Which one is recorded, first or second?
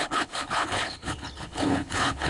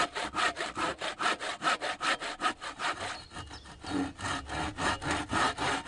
second